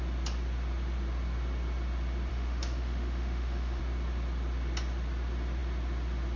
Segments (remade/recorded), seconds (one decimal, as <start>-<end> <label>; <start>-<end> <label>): 0.0-2.3 recorded; 2.3-3.8 remade; 3.8-6.4 recorded